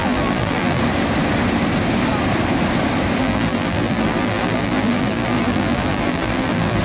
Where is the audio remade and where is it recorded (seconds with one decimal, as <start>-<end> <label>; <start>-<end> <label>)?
0.0-0.8 remade; 0.8-3.2 recorded; 3.2-6.8 remade